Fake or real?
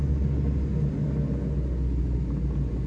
real